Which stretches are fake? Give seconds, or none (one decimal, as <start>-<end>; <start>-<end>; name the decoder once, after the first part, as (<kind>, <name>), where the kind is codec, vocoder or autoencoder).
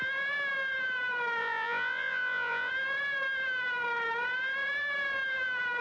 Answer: 1.4-2.7 (vocoder, Vocos)